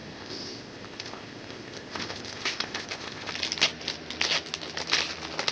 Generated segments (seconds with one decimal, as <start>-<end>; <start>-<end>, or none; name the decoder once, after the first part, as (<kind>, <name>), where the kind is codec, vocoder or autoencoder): 0.0-3.3 (codec, ZipCodec)